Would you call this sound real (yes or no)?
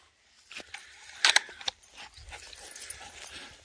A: yes